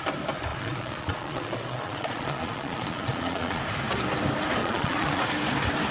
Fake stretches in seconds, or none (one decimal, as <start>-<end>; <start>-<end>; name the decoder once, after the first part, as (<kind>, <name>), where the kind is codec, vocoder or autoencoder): 0.5-3.6 (vocoder, Vocos); 4.6-5.2